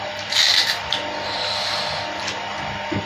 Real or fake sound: real